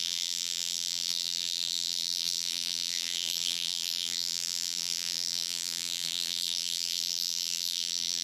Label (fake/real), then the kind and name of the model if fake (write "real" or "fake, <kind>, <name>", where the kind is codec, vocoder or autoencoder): fake, vocoder, BigVGAN v2